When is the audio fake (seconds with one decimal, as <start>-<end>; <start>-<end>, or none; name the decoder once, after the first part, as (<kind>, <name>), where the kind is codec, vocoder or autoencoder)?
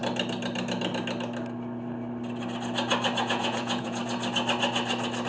3.2-4.0 (vocoder, Vocos)